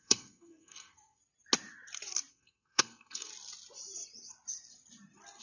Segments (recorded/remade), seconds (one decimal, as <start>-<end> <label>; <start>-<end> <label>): 0.0-1.2 remade; 1.2-2.3 recorded; 2.3-3.3 remade; 3.3-5.4 recorded